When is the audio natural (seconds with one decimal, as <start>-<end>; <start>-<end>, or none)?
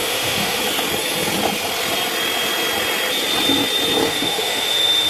0.6-4.1